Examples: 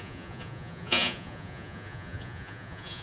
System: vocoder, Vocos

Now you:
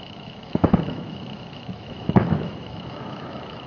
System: autoencoder, DAC-VAE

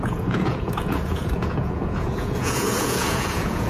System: vocoder, Vocos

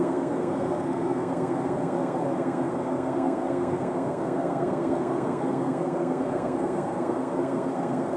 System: codec, SNAC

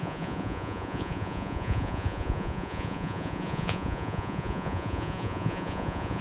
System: vocoder, Vocos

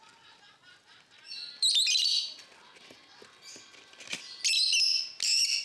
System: none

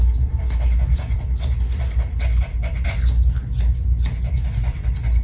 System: none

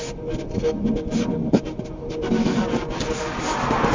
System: none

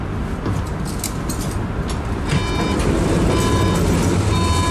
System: none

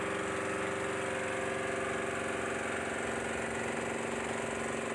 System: none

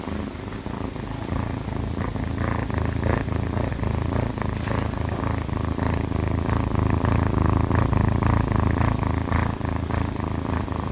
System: none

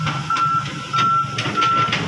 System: none